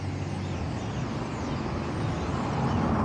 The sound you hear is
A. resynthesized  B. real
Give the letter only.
B